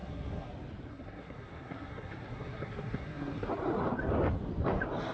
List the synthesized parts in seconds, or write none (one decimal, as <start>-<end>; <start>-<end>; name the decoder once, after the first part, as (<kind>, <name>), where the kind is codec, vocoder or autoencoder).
0.0-0.5 (codec, SNAC); 0.9-3.5